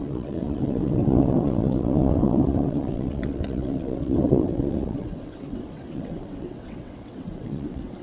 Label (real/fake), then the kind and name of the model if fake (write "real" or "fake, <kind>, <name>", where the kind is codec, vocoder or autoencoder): fake, vocoder, WaveNeXt